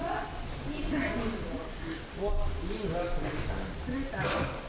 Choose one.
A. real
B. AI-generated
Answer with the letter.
A